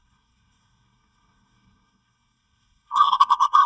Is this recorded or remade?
remade